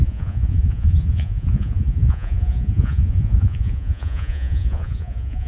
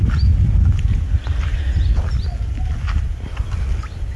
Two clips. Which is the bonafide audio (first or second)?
second